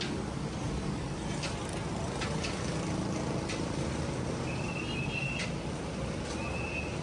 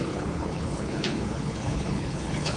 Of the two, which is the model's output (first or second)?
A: second